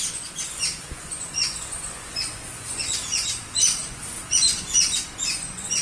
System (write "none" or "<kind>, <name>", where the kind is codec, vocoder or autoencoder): vocoder, Vocos